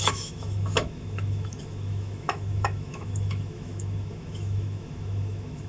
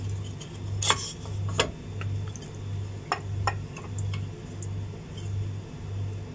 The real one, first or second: second